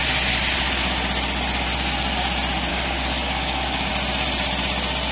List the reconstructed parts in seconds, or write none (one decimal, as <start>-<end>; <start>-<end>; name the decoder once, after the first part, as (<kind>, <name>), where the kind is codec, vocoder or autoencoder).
2.7-3.9 (codec, DAC)